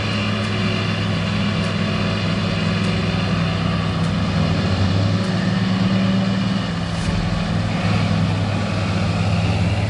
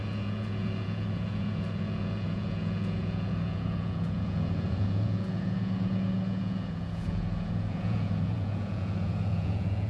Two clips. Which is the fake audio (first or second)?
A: second